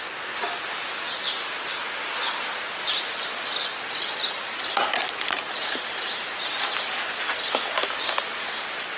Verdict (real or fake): real